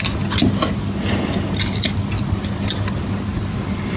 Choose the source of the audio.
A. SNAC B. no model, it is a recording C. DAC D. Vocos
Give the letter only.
B